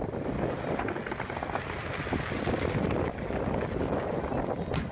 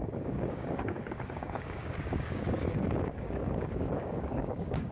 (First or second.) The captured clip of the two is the first